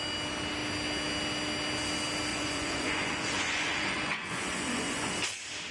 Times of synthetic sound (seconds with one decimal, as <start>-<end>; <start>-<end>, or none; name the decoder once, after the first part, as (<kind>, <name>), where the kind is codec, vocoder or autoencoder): 2.3-5.1 (vocoder, Vocos)